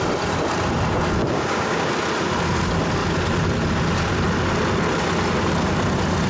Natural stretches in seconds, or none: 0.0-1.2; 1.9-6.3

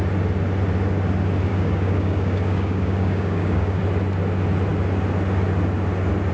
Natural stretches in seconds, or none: 0.0-1.5; 3.8-6.3

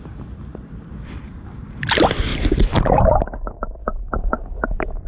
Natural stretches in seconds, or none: 0.0-3.8; 4.5-5.1

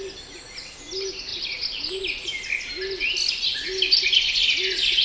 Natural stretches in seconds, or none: 0.0-5.0

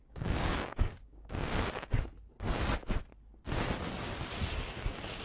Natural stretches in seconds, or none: 2.1-5.2

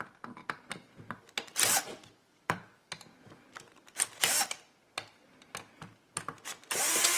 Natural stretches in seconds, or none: 0.0-2.0; 2.9-7.2

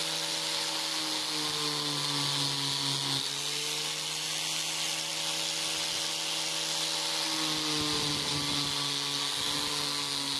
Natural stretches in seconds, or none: 0.0-10.4